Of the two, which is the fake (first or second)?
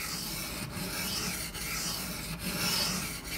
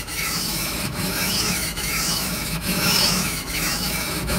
second